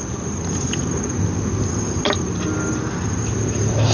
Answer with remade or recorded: recorded